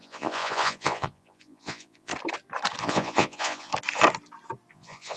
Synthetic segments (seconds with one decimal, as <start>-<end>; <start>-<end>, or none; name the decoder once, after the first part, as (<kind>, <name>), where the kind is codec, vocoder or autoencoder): 0.0-2.1 (vocoder, Vocos); 2.8-3.7; 4.7-5.2